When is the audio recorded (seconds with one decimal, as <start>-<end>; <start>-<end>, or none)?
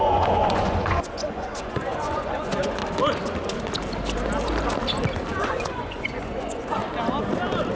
2.8-5.4; 6.8-7.8